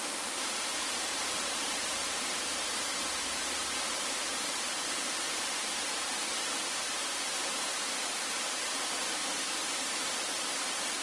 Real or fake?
fake